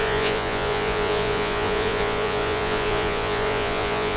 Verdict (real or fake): fake